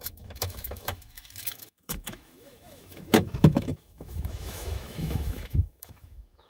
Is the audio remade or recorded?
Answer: remade